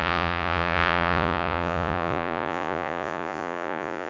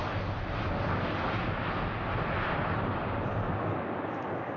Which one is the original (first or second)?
second